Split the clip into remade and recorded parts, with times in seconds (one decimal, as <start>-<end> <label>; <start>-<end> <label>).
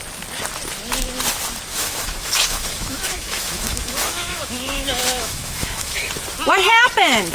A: 0.0-1.7 recorded; 1.7-6.1 remade; 6.1-7.3 recorded